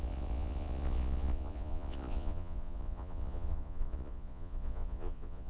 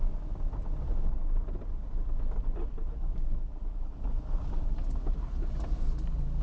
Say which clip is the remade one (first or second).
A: first